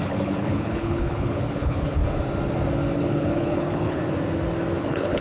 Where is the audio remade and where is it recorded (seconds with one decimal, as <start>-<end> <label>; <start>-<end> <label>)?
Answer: 0.0-2.0 remade; 2.0-3.0 recorded; 3.0-4.0 remade; 4.0-4.8 recorded; 4.8-5.2 remade